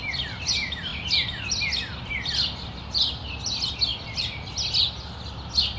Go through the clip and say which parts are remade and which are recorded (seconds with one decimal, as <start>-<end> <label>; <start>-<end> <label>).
0.0-5.8 recorded

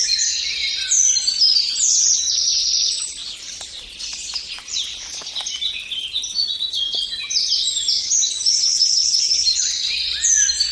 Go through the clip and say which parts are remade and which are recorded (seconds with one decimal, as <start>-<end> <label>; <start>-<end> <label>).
0.0-8.7 recorded; 8.7-9.9 remade; 9.9-10.7 recorded

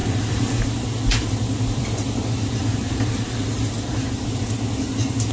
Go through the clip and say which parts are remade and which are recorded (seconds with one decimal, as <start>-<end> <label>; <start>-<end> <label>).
0.0-0.6 remade; 0.6-1.2 recorded; 1.2-4.4 remade; 4.4-5.3 recorded

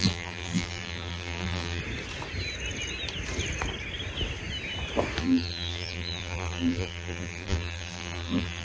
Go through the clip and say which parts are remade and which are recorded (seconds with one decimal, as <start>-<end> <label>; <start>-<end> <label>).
0.0-1.8 remade; 1.8-5.2 recorded; 5.2-8.6 remade

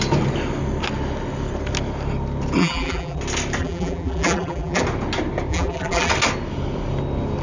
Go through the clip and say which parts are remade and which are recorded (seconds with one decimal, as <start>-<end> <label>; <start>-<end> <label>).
0.0-2.6 recorded; 2.6-3.2 remade; 3.2-3.6 recorded; 3.6-4.8 remade; 4.8-5.5 recorded; 5.5-6.1 remade; 6.1-7.4 recorded

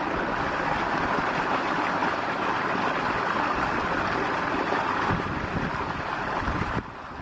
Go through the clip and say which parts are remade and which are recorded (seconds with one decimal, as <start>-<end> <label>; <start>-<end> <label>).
0.0-2.0 recorded; 2.0-2.6 remade; 2.6-6.1 recorded; 6.1-6.8 remade; 6.8-7.2 recorded

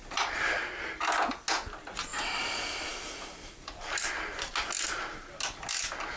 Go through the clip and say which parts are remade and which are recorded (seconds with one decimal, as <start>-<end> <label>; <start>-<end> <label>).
0.0-0.6 remade; 0.6-2.1 recorded; 2.1-4.5 remade; 4.5-6.2 recorded